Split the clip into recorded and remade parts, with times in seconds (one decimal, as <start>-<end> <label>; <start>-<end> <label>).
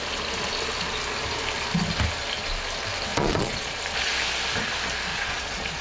0.0-3.1 recorded; 3.1-3.7 remade; 3.7-5.1 recorded; 5.1-5.8 remade